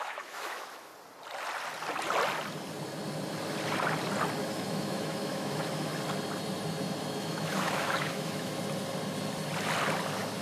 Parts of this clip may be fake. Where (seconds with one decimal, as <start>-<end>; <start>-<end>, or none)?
0.0-0.9; 4.4-5.9; 7.2-8.5